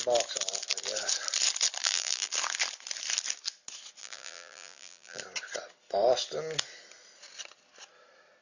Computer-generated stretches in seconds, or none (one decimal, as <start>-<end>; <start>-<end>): 1.8-2.3; 4.0-5.2